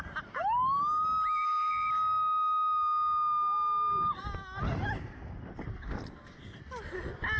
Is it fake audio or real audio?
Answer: real